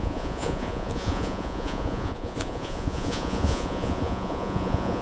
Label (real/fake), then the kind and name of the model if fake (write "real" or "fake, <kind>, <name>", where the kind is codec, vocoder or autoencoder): fake, vocoder, Vocos